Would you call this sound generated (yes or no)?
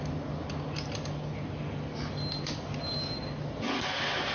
no